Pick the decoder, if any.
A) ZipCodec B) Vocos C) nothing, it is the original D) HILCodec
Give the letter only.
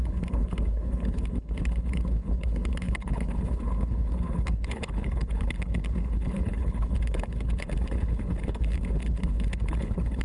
D